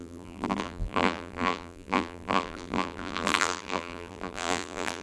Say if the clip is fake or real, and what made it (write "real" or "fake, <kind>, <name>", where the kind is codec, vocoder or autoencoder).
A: fake, vocoder, BigVGAN v2